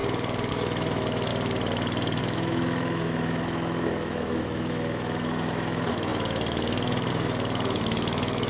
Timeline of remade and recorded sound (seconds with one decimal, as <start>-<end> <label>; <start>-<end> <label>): 0.0-0.5 recorded; 0.5-1.3 remade; 1.3-2.2 recorded; 2.2-8.5 remade

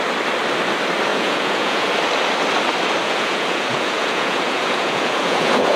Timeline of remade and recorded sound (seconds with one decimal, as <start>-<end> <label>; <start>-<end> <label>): 0.0-1.1 recorded; 1.1-1.9 remade; 1.9-3.0 recorded; 3.0-5.8 remade

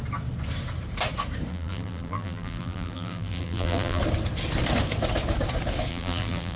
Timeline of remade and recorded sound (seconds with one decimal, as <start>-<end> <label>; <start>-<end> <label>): 0.0-1.5 recorded; 1.5-4.0 remade; 4.0-5.9 recorded; 5.9-6.6 remade

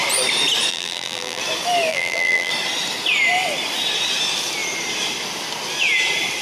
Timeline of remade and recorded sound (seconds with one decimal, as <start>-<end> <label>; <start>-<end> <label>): 0.0-0.7 recorded; 0.7-1.4 remade; 1.4-1.9 recorded; 1.9-2.5 remade; 2.5-6.4 recorded

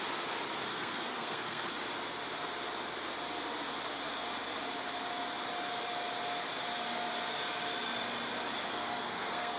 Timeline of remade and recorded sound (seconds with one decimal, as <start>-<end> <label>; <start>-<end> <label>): 0.0-0.7 recorded; 0.7-1.7 remade; 1.7-8.7 recorded; 8.7-9.6 remade

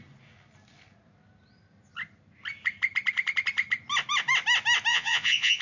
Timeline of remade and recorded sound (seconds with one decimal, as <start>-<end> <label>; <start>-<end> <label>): 0.0-4.9 recorded; 4.9-5.6 remade

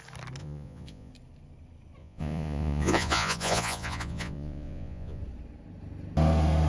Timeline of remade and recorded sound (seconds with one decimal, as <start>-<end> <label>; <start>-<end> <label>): 0.0-0.4 recorded; 0.4-1.1 remade; 1.1-2.0 recorded; 2.0-5.2 remade; 5.2-6.7 recorded